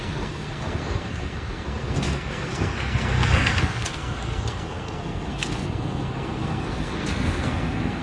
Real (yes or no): no